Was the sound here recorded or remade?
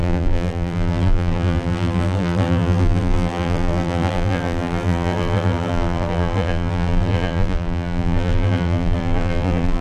remade